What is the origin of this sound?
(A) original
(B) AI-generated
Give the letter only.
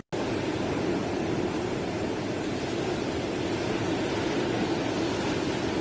A